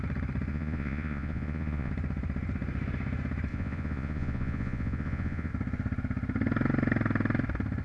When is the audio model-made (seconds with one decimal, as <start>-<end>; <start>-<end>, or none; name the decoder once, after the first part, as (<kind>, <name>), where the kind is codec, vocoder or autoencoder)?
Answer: 0.5-1.9 (vocoder, Vocos); 3.5-5.5